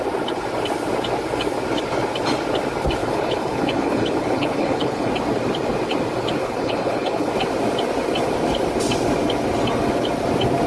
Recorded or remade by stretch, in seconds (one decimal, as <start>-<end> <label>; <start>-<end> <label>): 0.0-3.0 recorded; 3.0-5.1 remade; 5.1-6.4 recorded; 6.4-7.3 remade; 7.3-10.7 recorded